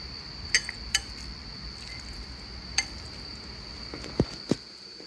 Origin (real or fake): real